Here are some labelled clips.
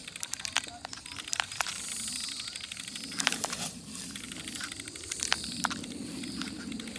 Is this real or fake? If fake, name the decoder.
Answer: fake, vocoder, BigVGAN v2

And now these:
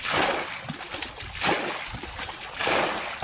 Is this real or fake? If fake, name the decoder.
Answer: real